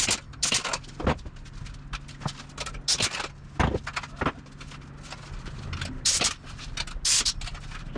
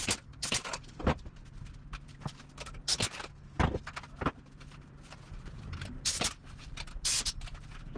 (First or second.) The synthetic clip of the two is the second